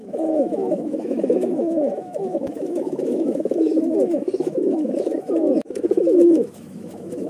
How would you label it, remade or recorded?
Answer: remade